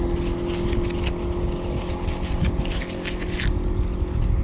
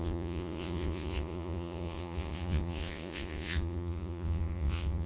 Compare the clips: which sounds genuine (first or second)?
first